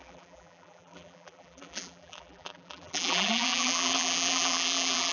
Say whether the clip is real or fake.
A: fake